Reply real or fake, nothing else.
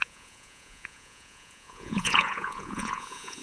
fake